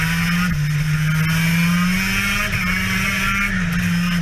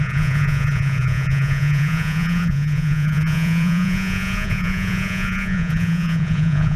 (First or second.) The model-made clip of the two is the second